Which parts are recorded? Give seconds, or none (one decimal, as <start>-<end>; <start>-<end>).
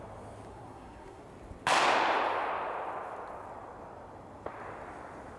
0.0-0.5; 1.2-5.4